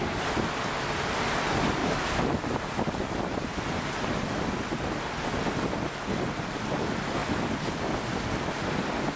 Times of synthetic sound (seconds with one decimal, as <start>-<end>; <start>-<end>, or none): none